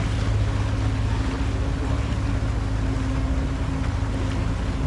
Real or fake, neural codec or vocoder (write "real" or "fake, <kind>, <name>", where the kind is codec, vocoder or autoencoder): real